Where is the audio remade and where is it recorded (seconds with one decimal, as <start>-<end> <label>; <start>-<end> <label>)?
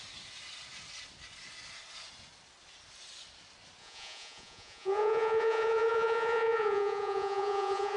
0.0-3.8 recorded; 3.8-8.0 remade